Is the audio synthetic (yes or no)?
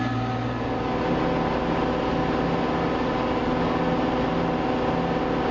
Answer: no